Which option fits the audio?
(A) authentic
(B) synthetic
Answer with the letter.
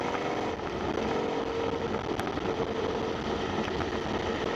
A